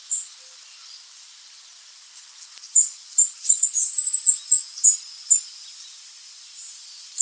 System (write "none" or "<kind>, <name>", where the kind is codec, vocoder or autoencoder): vocoder, BigVGAN v2